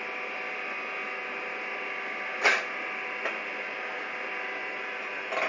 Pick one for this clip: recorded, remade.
recorded